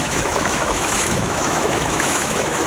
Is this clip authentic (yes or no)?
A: no